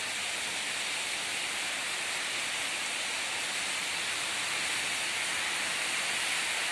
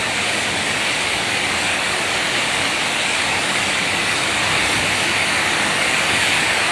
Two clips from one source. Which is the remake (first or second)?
second